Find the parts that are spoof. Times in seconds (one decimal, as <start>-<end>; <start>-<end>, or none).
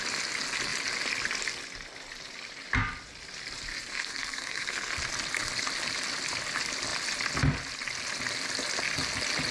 3.7-4.9